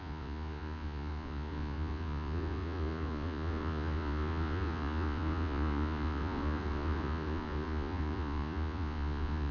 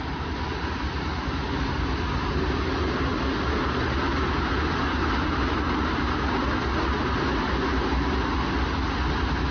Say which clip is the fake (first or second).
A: first